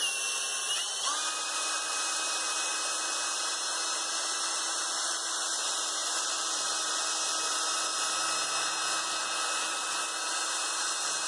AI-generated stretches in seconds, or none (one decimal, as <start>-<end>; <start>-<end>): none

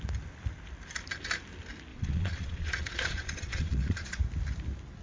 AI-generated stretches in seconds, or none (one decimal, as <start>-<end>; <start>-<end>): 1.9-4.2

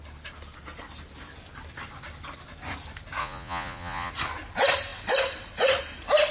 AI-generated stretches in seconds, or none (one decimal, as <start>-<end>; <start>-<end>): 3.2-4.1

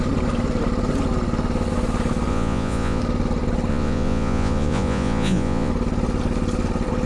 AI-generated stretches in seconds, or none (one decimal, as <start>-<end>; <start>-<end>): 2.3-3.0; 3.7-5.7

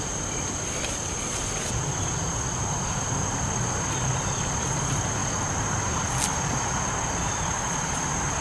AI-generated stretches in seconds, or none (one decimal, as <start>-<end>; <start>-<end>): none